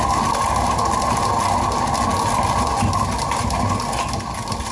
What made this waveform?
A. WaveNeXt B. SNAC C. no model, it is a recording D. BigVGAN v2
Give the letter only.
C